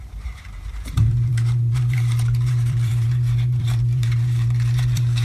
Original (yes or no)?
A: no